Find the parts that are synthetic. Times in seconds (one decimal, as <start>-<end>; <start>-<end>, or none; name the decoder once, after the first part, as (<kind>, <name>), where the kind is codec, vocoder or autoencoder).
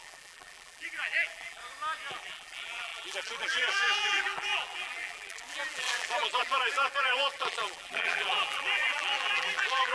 0.0-1.6 (vocoder, BigVGAN v2); 2.1-9.9